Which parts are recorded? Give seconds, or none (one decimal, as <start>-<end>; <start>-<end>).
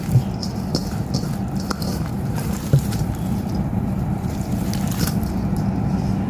0.0-1.9; 4.7-6.3